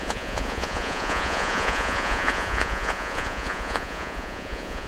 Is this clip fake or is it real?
fake